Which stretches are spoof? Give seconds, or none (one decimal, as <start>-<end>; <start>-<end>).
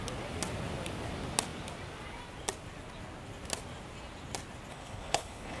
4.7-5.6